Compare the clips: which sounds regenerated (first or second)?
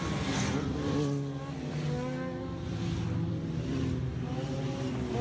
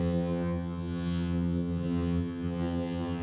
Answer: second